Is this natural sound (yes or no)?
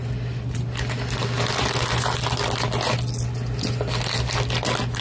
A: yes